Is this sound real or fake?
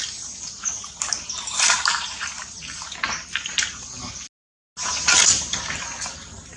real